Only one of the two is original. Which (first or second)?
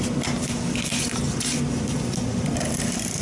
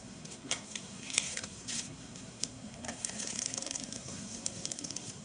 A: first